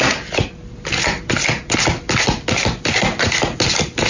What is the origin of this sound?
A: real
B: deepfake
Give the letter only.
A